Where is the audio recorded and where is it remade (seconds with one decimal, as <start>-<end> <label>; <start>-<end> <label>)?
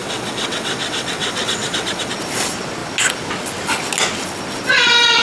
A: 0.0-2.1 remade; 2.1-5.2 recorded